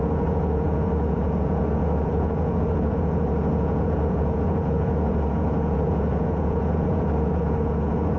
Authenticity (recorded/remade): remade